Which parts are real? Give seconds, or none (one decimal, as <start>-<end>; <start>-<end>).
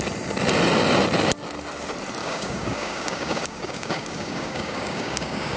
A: 0.0-2.2